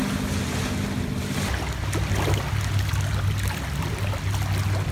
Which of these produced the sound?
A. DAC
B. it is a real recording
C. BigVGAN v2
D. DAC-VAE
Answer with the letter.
B